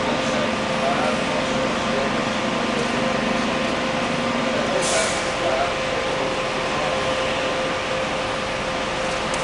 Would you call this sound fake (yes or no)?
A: no